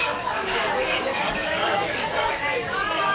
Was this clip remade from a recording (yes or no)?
yes